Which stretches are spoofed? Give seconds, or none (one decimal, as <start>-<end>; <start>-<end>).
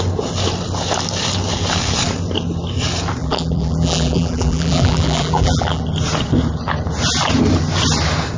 3.2-5.8